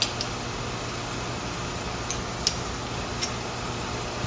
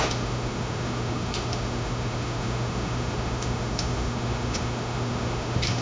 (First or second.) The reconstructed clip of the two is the second